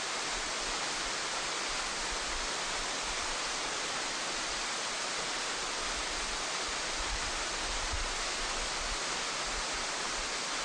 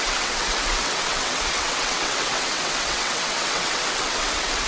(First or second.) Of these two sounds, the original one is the first